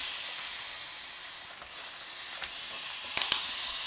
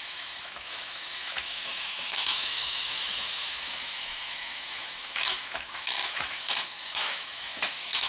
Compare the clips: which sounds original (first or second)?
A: first